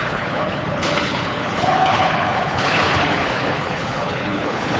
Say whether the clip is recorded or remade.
remade